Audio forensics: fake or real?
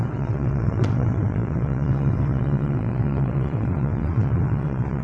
fake